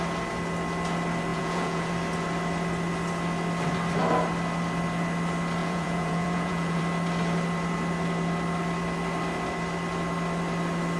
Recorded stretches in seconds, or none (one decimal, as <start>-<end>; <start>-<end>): 0.0-1.3; 1.9-5.6; 6.8-11.0